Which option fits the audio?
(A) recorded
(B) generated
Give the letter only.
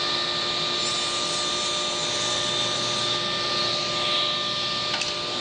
A